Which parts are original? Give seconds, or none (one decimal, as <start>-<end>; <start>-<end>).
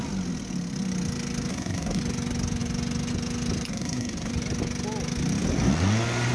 0.0-1.5; 2.0-3.7; 4.3-6.3